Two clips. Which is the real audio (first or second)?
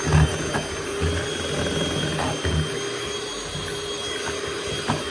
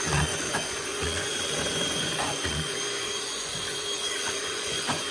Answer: first